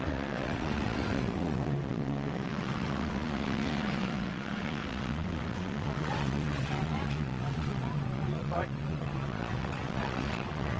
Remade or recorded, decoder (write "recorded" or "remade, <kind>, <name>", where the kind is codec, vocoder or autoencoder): remade, vocoder, WaveNeXt